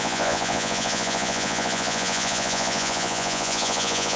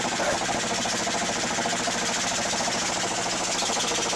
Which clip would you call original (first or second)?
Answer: second